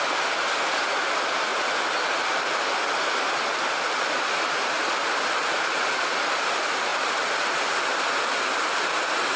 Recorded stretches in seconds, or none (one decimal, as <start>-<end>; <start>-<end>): 0.0-9.4